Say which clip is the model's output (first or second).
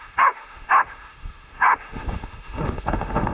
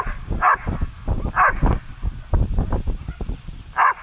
first